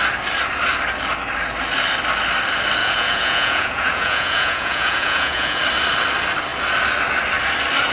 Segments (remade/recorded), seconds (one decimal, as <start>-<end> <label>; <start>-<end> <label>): 0.0-2.8 recorded; 2.8-5.6 remade; 5.6-7.9 recorded